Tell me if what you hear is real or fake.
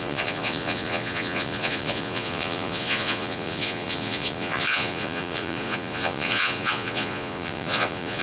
fake